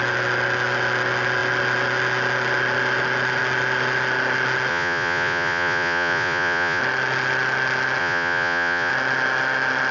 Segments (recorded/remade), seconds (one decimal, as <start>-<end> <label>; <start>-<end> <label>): 0.0-4.7 recorded; 4.7-6.8 remade; 6.8-8.0 recorded; 8.0-8.9 remade; 8.9-9.9 recorded

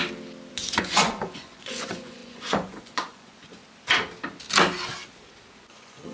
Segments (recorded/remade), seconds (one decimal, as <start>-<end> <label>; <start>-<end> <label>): 0.0-0.5 recorded; 0.5-3.6 remade; 3.6-5.6 recorded; 5.6-6.1 remade

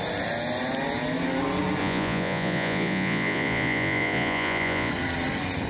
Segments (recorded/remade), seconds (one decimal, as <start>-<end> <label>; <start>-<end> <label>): 0.0-1.8 recorded; 1.8-4.9 remade; 4.9-5.7 recorded

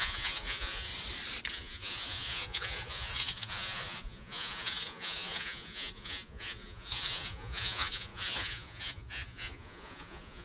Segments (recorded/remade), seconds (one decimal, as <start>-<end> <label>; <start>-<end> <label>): 0.0-0.9 remade; 0.9-1.5 recorded; 1.5-10.4 remade

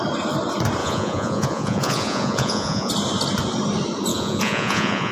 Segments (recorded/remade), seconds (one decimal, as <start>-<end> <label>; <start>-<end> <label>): 0.0-0.8 recorded; 0.8-2.9 remade; 2.9-4.1 recorded; 4.1-5.1 remade

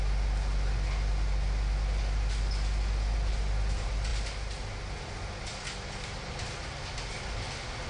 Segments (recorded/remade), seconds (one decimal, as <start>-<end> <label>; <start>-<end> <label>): 0.0-7.9 recorded